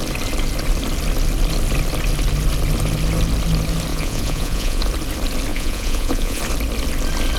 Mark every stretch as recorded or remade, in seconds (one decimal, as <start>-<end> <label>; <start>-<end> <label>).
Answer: 0.0-3.9 recorded; 3.9-4.9 remade; 4.9-5.5 recorded; 5.5-6.4 remade; 6.4-7.4 recorded